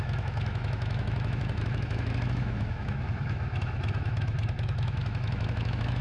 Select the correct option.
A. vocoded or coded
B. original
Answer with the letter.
A